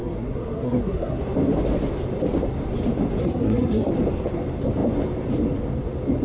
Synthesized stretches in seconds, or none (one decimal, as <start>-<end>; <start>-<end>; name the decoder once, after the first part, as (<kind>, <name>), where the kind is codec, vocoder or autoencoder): 0.0-1.2 (codec, SNAC); 3.2-3.9